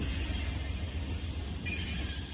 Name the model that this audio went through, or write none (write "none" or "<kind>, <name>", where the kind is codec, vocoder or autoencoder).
none